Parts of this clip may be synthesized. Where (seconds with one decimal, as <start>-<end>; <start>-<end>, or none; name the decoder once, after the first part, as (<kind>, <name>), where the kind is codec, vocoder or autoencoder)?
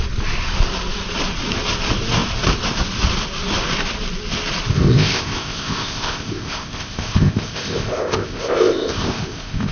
4.7-9.7 (codec, ZipCodec)